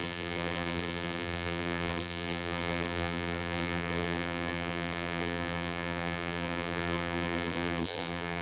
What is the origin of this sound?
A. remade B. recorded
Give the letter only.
A